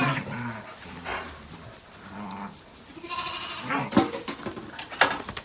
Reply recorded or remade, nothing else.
recorded